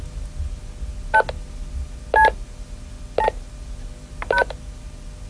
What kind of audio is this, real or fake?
real